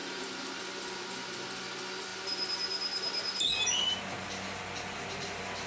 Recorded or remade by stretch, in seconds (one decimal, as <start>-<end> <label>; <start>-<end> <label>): 0.0-0.6 remade; 0.6-5.7 recorded